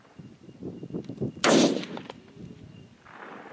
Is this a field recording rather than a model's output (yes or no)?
yes